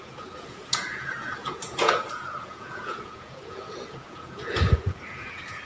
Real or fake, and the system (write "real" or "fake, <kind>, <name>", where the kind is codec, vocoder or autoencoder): fake, vocoder, Vocos